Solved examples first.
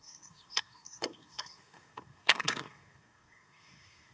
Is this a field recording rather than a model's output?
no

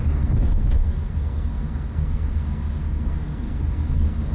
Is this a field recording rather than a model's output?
no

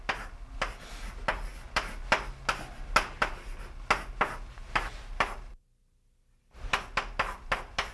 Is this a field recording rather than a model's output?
yes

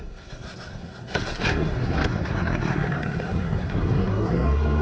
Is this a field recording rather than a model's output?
no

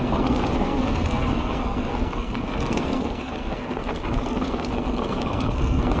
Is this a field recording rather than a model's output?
no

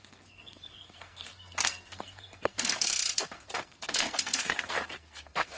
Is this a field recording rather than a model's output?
no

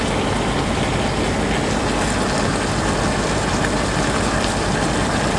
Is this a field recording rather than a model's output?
yes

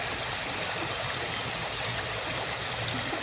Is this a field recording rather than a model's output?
yes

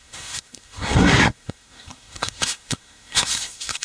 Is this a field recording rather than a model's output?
no